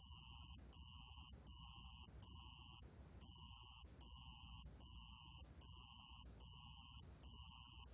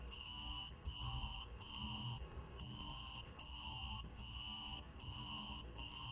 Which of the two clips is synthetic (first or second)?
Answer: second